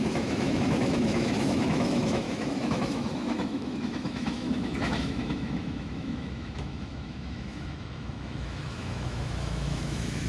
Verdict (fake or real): fake